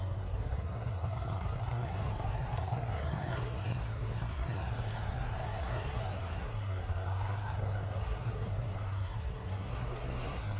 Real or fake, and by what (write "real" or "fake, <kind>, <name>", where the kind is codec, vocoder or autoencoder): fake, codec, SNAC